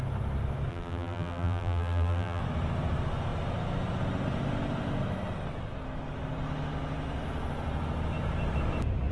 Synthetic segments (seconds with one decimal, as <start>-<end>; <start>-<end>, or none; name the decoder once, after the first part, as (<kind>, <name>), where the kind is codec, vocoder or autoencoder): 0.7-2.4 (vocoder, BigVGAN v2)

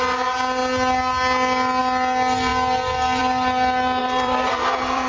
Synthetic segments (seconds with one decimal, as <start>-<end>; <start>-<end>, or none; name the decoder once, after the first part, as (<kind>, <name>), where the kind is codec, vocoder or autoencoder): 4.0-5.1 (vocoder, BigVGAN v2)

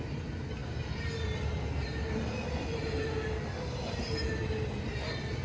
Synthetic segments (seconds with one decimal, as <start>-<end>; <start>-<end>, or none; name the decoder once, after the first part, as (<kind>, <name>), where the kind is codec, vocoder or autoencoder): none

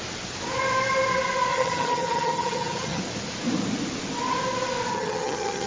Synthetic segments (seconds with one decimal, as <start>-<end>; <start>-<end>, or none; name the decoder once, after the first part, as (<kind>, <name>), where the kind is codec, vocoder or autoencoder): 1.5-3.0 (vocoder, HiFi-GAN); 4.9-5.7

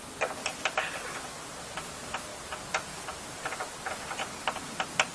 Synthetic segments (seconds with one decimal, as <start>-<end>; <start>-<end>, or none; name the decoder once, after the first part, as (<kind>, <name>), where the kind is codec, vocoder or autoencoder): none

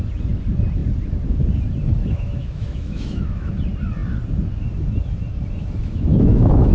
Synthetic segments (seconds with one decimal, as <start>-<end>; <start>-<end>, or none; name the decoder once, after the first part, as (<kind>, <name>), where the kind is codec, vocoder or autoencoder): 2.0-3.5 (autoencoder, DAC-VAE); 5.8-6.7

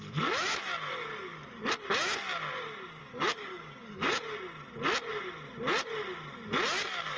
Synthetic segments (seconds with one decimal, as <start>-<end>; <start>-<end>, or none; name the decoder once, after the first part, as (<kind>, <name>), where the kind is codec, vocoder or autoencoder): 1.1-1.7 (codec, DAC); 3.0-4.2

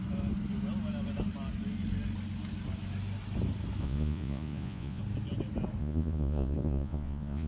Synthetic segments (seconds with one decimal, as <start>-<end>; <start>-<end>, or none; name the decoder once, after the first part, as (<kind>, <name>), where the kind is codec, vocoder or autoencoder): 3.8-5.0 (vocoder, Vocos); 5.8-7.5